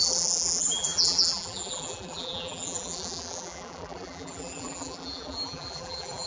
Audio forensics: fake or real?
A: fake